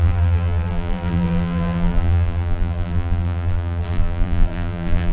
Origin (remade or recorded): remade